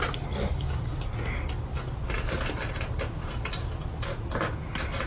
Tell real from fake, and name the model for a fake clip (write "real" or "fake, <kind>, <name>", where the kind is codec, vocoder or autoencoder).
real